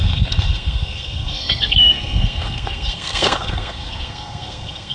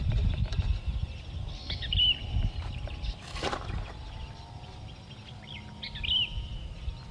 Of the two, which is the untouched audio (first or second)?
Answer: second